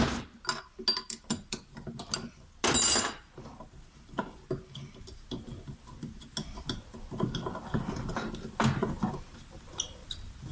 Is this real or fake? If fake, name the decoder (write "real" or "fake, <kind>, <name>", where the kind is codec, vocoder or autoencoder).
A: real